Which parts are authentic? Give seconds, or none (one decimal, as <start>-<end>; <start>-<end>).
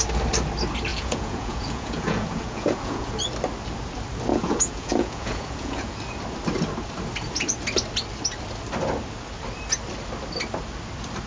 0.0-0.9; 3.1-4.3; 5.9-11.3